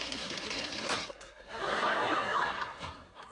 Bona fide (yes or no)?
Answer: no